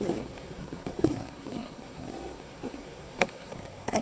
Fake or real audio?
fake